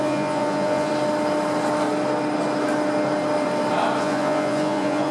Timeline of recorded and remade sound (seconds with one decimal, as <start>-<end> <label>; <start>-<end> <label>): 0.0-0.9 remade; 0.9-4.0 recorded; 4.0-5.1 remade